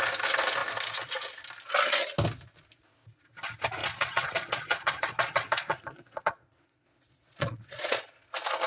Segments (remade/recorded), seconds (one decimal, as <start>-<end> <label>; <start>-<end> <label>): 0.0-3.8 recorded; 3.8-8.0 remade; 8.0-8.7 recorded